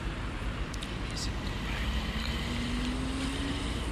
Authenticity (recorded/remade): recorded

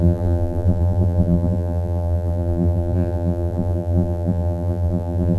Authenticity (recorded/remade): remade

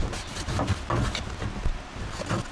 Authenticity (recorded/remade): recorded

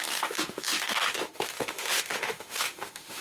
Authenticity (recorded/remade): remade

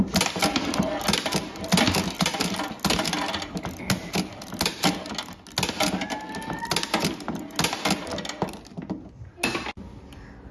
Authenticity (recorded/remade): recorded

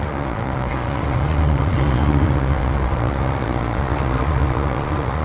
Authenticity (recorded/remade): remade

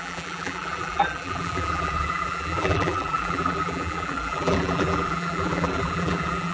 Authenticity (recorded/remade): remade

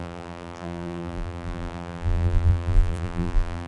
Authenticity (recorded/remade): remade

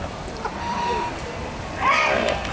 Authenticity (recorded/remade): remade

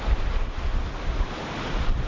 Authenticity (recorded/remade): recorded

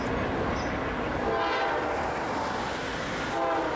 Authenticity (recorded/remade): recorded